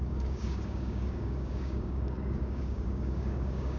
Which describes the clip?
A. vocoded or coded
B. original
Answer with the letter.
A